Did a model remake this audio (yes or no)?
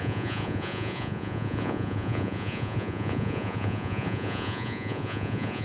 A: yes